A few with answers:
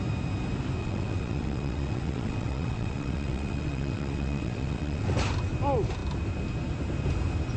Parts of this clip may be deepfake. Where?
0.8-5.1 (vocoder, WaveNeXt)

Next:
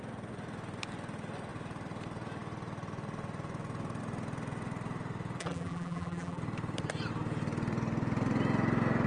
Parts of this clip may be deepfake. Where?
5.4-6.4 (vocoder, BigVGAN v2)

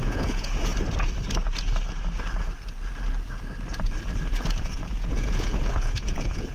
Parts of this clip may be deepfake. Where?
0.0-0.7 (vocoder, Vocos); 4.6-6.5